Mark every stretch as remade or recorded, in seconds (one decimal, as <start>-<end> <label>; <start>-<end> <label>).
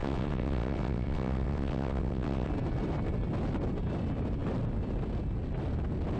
0.0-2.5 remade; 2.5-6.2 recorded